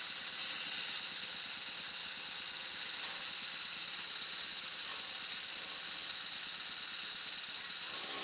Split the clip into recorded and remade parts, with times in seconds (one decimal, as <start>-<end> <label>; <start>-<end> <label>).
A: 0.0-8.2 recorded